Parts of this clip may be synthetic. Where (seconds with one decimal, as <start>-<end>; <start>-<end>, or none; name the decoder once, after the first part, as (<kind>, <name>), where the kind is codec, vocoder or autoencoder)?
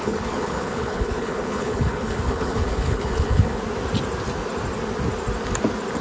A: 0.0-3.6 (codec, HILCodec)